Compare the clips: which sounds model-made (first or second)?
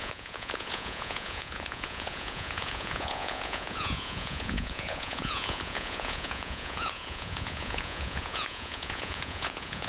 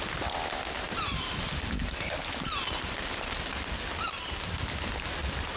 first